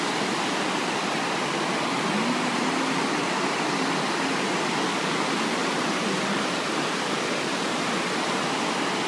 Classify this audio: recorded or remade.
recorded